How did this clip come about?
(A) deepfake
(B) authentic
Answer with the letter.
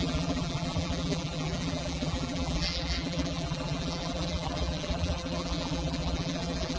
A